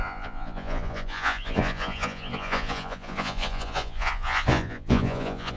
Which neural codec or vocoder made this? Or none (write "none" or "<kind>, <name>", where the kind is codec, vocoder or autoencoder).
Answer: vocoder, Vocos